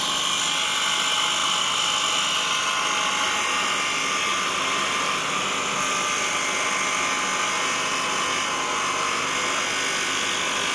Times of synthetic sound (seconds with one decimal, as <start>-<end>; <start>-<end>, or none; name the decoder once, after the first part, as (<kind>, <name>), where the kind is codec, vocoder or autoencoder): none